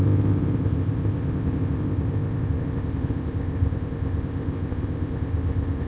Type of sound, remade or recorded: remade